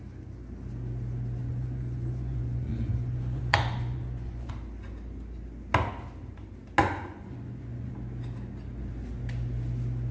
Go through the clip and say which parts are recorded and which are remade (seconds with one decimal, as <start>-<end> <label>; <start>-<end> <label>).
0.0-1.4 recorded; 1.4-4.5 remade; 4.5-6.8 recorded; 6.8-7.9 remade; 7.9-10.1 recorded